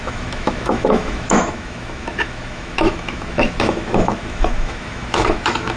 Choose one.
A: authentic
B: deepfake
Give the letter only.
B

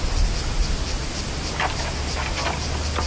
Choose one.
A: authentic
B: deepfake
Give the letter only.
A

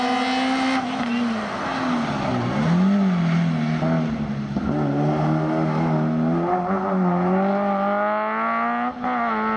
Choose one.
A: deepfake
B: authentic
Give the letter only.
B